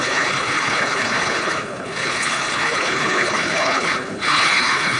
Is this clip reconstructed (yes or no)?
yes